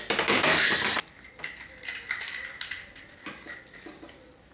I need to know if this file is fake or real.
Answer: real